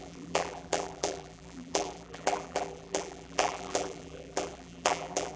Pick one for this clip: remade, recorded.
remade